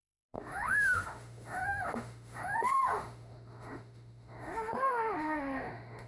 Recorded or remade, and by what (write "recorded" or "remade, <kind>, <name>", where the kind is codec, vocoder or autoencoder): remade, autoencoder, DAC-VAE